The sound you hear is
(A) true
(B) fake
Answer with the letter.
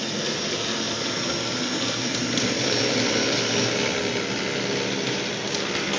A